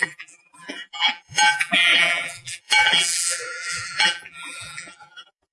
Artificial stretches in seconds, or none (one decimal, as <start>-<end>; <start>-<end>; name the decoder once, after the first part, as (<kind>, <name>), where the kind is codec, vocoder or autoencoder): 0.0-5.5 (vocoder, BigVGAN v2)